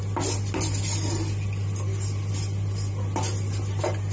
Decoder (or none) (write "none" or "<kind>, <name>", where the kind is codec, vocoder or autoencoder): none